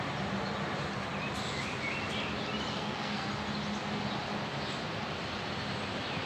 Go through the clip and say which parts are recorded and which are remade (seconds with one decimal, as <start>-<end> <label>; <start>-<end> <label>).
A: 0.0-2.7 recorded; 2.7-3.3 remade; 3.3-6.3 recorded